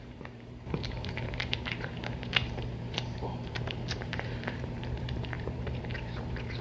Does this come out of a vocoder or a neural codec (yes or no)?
yes